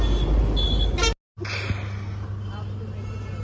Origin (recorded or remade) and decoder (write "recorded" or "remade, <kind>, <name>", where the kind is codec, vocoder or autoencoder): recorded